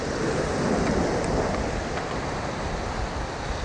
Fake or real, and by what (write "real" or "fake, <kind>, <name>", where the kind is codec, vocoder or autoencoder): real